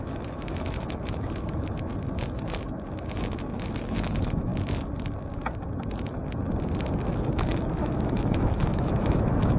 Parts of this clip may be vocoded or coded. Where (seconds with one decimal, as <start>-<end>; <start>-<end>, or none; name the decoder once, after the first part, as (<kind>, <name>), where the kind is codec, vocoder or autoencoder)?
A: 0.0-1.9 (autoencoder, DAC-VAE); 3.0-4.5; 7.8-9.6